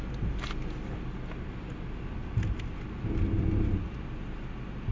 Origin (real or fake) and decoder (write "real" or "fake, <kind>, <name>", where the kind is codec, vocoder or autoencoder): real